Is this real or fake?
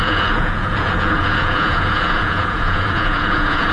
fake